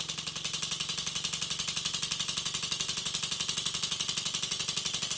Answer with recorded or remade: recorded